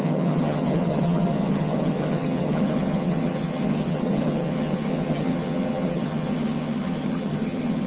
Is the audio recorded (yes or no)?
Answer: no